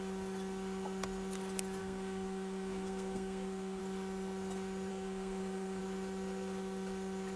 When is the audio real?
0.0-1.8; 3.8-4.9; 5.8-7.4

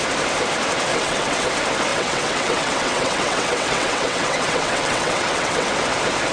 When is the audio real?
0.0-0.9; 1.5-1.9; 5.7-6.3